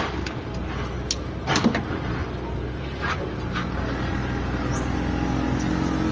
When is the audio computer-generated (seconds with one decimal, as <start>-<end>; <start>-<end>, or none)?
none